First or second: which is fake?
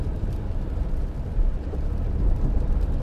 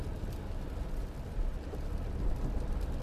first